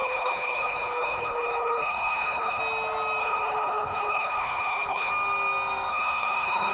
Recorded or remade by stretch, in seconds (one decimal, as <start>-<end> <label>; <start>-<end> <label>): 0.0-2.6 remade; 2.6-3.2 recorded; 3.2-5.1 remade; 5.1-5.9 recorded; 5.9-6.7 remade